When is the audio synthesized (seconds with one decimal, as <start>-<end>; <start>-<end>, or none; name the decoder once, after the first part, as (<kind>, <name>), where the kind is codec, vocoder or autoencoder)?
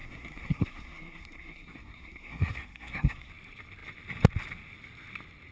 0.0-3.3 (codec, SNAC)